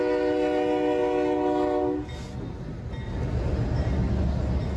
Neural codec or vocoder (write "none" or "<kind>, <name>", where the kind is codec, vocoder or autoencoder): none